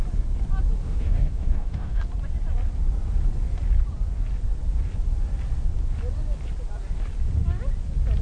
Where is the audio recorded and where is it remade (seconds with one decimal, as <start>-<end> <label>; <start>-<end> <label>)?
0.0-0.8 recorded; 0.8-2.0 remade; 2.0-8.2 recorded